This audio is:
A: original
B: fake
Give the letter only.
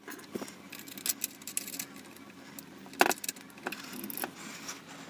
A